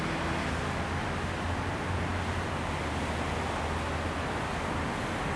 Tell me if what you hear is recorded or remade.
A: recorded